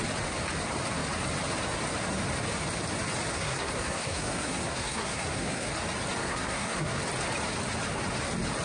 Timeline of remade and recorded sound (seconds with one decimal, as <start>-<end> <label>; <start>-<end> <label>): 0.0-3.3 recorded; 3.3-5.7 remade; 5.7-6.2 recorded; 6.2-7.0 remade; 7.0-8.6 recorded